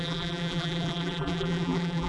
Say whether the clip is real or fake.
fake